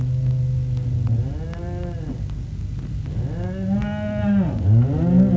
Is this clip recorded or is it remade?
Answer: recorded